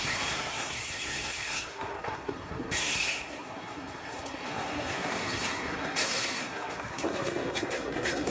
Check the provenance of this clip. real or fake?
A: fake